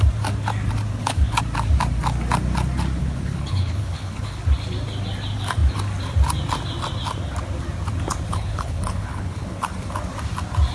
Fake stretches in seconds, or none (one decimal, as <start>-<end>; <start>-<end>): 0.9-1.4; 3.0-4.4; 8.3-9.7